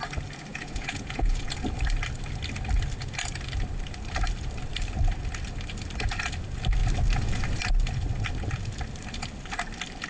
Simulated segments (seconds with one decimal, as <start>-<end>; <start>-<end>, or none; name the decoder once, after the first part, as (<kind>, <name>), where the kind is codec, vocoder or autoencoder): 0.5-1.5 (vocoder, Vocos)